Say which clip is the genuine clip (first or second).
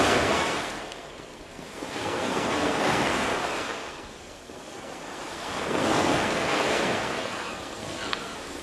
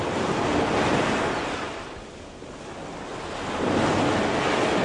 second